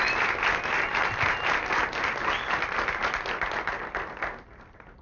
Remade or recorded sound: recorded